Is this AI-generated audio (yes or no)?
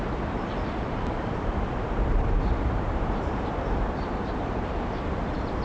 yes